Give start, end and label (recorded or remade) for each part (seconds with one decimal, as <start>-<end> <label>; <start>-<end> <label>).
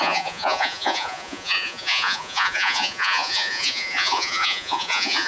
0.0-5.3 remade